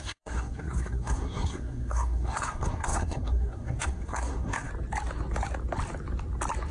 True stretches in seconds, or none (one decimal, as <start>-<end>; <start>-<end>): 4.7-6.7